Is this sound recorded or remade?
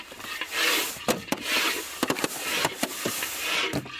recorded